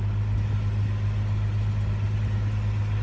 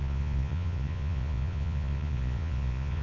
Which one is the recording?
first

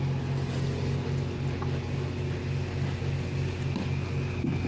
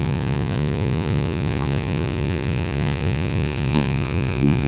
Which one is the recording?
first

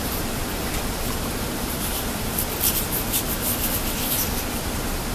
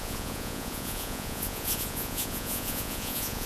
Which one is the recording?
first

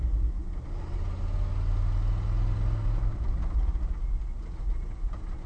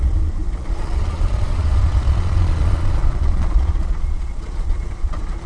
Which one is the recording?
first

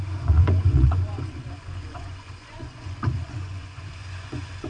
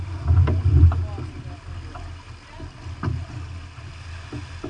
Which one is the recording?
second